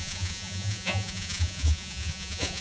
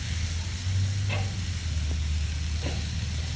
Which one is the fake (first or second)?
first